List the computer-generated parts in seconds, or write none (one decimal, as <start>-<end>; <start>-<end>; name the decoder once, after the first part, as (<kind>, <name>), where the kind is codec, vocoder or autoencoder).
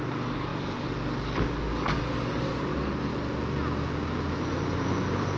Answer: 0.0-3.1 (codec, DAC)